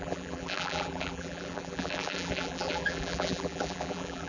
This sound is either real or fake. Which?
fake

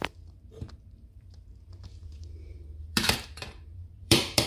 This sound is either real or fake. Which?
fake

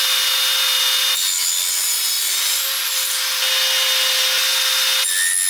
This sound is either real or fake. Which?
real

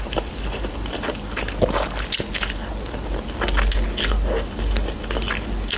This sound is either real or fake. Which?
real